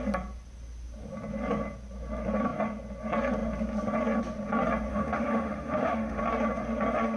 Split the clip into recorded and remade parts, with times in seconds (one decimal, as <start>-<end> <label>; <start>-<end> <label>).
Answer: 0.0-4.9 recorded; 4.9-6.2 remade; 6.2-7.2 recorded